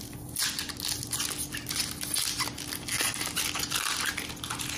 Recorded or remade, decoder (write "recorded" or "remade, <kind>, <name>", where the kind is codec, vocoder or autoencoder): recorded